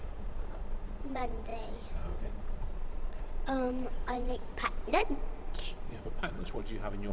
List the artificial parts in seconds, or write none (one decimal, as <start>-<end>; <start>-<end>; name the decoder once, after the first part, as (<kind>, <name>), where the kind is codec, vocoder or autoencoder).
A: 0.0-6.6 (vocoder, Vocos)